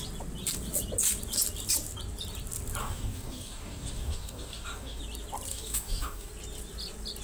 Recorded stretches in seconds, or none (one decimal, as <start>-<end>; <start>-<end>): 0.0-2.8; 5.0-5.5; 6.3-7.2